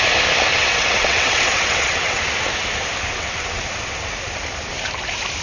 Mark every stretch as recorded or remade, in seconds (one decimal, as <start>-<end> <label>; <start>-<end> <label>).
0.0-0.5 recorded; 0.5-2.2 remade; 2.2-3.1 recorded; 3.1-3.6 remade; 3.6-5.4 recorded